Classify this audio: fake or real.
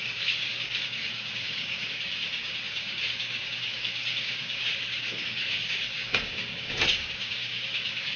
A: fake